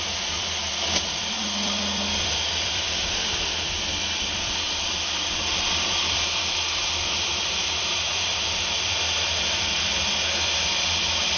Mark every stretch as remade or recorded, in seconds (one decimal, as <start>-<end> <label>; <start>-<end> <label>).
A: 0.0-11.4 remade